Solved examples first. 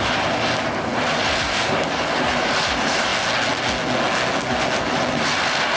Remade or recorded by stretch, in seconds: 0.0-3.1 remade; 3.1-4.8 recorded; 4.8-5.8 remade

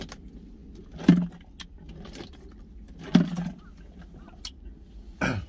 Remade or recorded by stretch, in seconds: 0.0-5.5 recorded

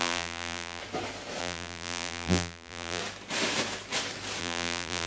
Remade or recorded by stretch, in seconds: 0.0-0.8 remade; 0.8-1.4 recorded; 1.4-3.0 remade; 3.0-4.4 recorded; 4.4-5.1 remade

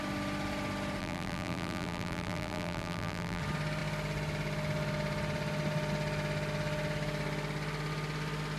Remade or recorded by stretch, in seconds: 0.0-1.0 recorded; 1.0-3.4 remade; 3.4-8.6 recorded

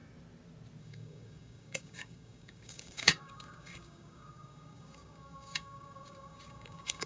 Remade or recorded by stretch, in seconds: 0.0-0.8 recorded; 0.8-7.1 remade